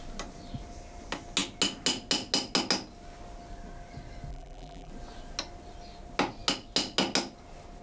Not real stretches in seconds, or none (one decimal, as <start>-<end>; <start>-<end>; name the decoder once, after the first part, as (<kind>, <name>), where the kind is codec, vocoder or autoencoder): 4.3-4.9 (vocoder, BigVGAN v2)